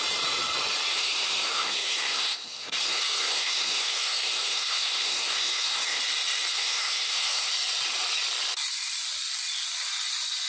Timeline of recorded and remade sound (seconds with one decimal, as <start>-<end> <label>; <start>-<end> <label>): 0.0-0.9 recorded; 0.9-6.0 remade; 6.0-6.5 recorded; 6.5-7.5 remade; 7.5-10.5 recorded